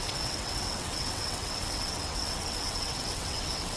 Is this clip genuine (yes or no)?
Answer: no